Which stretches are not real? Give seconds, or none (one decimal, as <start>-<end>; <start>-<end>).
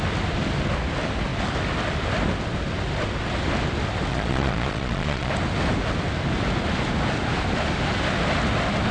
4.1-5.3